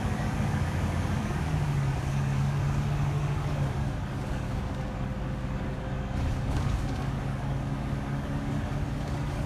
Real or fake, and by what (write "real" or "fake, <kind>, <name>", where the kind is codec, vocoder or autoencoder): fake, codec, DAC